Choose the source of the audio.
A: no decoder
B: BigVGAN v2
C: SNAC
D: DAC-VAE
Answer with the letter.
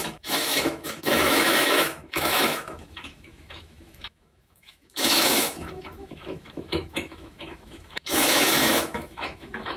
D